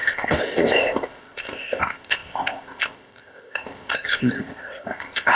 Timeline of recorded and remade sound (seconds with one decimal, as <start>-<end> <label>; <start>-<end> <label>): 0.0-5.4 remade